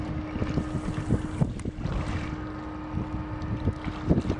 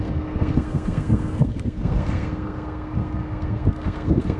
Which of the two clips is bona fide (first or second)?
first